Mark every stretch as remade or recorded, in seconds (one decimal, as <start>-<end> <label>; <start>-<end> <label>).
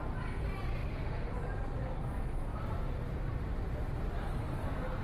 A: 0.0-0.8 recorded; 0.8-1.3 remade; 1.3-2.5 recorded; 2.5-4.4 remade; 4.4-5.0 recorded